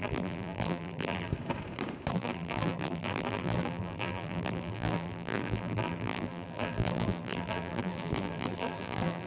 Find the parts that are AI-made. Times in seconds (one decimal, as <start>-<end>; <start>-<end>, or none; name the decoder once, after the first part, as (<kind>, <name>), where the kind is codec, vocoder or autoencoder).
0.0-1.3 (vocoder, BigVGAN v2); 2.1-9.3